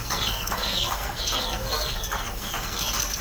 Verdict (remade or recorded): remade